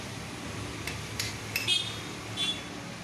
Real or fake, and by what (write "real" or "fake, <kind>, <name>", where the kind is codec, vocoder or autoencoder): real